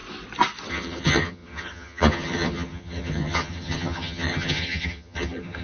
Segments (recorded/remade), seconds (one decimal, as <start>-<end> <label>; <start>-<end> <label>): 0.0-0.7 recorded; 0.7-5.6 remade